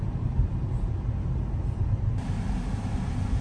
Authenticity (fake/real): real